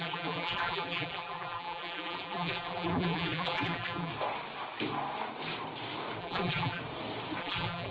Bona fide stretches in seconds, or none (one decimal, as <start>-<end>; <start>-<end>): 4.1-6.2; 6.8-7.4